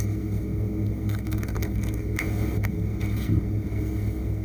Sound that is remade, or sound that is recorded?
remade